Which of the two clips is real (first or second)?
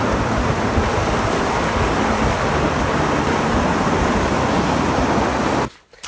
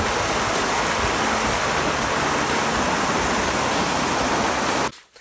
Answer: second